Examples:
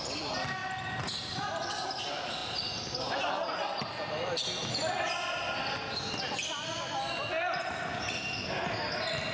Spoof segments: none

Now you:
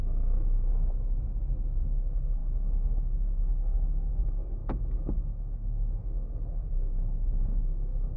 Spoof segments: 0.0-0.7 (codec, SNAC); 1.8-8.2

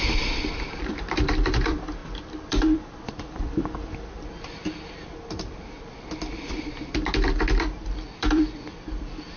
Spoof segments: 0.0-9.4 (vocoder, BigVGAN v2)

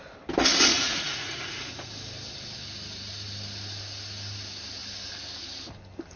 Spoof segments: 0.7-1.9 (vocoder, Vocos)

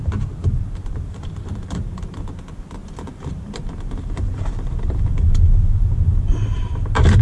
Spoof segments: 0.4-2.3 (vocoder, BigVGAN v2); 2.8-7.2